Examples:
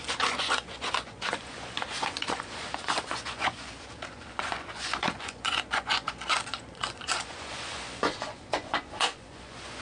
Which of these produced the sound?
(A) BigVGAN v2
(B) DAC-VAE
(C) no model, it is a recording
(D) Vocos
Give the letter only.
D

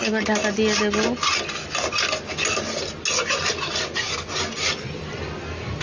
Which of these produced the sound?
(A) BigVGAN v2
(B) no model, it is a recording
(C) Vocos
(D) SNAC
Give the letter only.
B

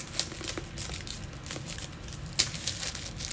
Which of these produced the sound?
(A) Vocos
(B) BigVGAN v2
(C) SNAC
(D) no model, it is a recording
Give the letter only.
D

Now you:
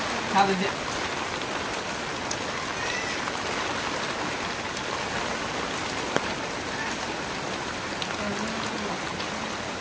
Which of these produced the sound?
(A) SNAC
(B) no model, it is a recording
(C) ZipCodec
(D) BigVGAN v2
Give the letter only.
B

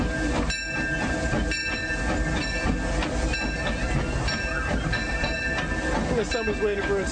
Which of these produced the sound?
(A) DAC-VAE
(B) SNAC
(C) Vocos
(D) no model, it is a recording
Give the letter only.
D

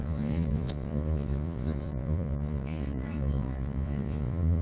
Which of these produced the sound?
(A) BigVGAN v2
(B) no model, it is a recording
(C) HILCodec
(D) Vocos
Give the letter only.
D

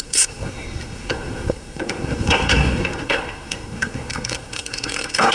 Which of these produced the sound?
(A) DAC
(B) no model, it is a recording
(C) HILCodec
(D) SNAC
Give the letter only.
D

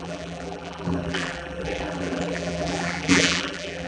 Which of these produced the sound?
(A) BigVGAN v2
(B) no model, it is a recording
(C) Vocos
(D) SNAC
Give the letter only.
A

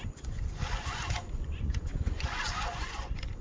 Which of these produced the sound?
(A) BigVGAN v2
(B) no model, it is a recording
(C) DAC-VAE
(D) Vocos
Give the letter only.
D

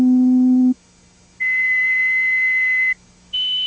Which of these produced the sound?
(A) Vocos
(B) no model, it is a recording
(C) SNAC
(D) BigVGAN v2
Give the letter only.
B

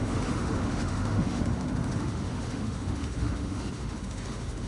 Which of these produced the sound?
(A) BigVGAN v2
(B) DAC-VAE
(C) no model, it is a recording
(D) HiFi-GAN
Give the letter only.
B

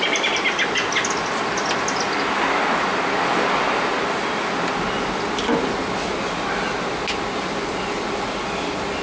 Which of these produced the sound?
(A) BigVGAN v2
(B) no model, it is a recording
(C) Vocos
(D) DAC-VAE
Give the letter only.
B